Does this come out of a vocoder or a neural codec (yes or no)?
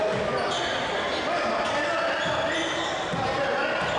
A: no